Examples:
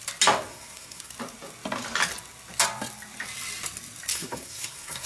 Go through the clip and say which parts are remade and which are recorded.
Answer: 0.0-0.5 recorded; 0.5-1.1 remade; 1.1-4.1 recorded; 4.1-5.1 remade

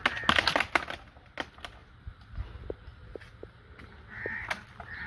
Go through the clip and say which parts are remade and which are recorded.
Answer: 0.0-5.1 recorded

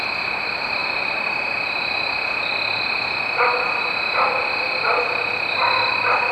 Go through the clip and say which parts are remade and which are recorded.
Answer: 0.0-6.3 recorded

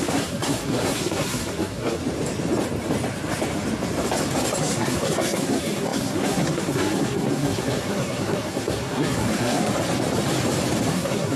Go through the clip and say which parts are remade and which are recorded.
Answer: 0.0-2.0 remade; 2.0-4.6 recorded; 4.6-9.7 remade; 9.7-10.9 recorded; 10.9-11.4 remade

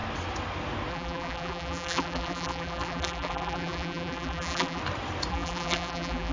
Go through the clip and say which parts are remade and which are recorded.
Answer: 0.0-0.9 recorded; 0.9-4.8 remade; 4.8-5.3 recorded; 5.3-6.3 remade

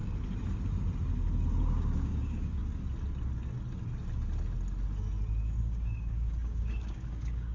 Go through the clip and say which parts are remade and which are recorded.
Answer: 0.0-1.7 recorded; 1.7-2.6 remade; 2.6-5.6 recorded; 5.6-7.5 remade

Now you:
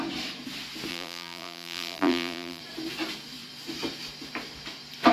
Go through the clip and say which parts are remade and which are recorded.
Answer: 0.0-0.9 recorded; 0.9-2.6 remade; 2.6-5.1 recorded